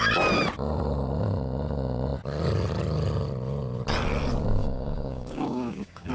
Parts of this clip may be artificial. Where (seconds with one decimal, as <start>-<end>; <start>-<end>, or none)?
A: 4.6-6.1